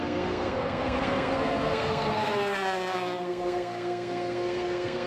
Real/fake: fake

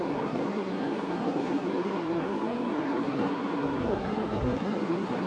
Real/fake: fake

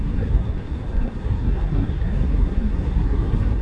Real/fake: fake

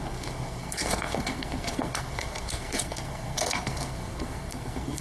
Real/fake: fake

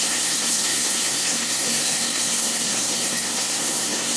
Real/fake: fake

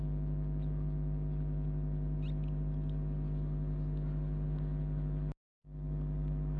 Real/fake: real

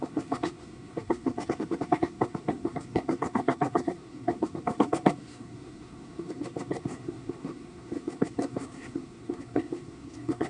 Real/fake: fake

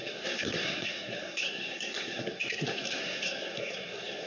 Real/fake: fake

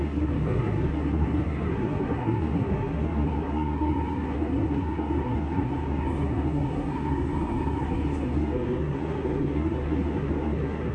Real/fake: fake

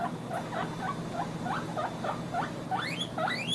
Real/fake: real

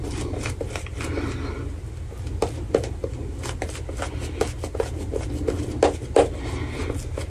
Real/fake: real